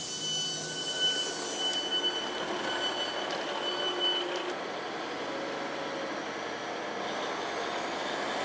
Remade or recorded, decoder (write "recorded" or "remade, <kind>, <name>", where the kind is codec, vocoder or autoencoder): recorded